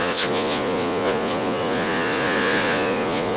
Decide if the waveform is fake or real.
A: fake